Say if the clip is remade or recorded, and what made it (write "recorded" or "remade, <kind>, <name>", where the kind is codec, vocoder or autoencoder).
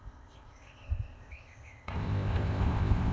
remade, codec, ZipCodec